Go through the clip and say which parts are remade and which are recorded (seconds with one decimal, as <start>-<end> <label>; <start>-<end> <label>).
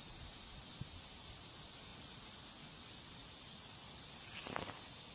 0.0-1.9 recorded; 1.9-2.8 remade; 2.8-3.2 recorded; 3.2-4.0 remade; 4.0-5.1 recorded